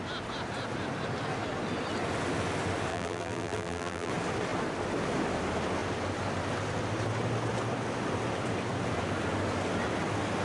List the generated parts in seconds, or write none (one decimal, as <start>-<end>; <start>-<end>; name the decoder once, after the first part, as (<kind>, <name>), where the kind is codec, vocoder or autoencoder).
2.9-4.1 (vocoder, BigVGAN v2)